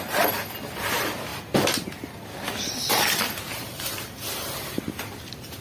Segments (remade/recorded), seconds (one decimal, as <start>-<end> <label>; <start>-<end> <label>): 0.0-5.6 recorded